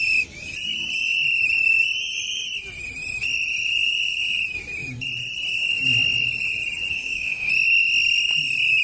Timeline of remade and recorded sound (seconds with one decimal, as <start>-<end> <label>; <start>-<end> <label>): 0.0-6.9 recorded; 6.9-7.5 remade; 7.5-8.8 recorded

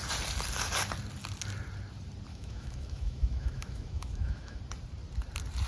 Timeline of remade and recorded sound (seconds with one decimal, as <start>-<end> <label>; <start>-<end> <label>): 0.0-2.3 recorded; 2.3-4.6 remade; 4.6-5.7 recorded